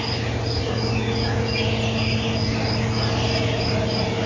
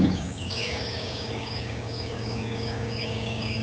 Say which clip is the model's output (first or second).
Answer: second